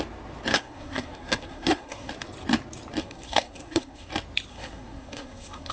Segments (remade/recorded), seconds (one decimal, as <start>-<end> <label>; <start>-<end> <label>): 0.0-0.5 recorded; 0.5-2.1 remade; 2.1-3.0 recorded; 3.0-4.1 remade; 4.1-4.5 recorded; 4.5-5.7 remade